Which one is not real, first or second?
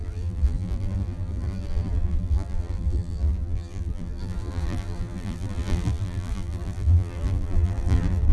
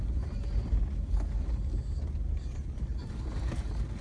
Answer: first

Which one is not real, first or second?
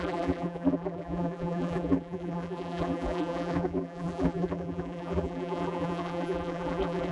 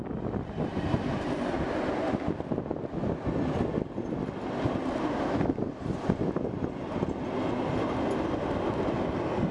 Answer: first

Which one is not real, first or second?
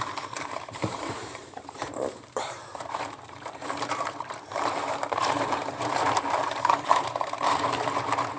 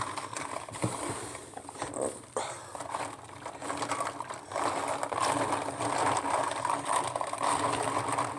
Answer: first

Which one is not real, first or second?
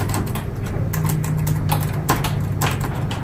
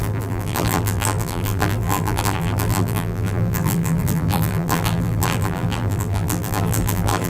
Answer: second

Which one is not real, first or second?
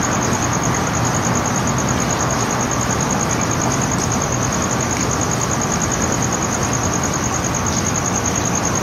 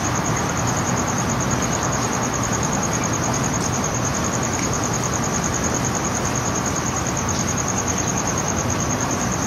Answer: second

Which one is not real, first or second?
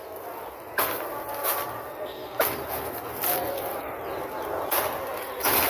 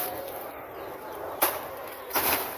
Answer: second